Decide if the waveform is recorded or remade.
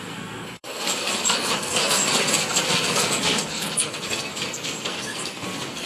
remade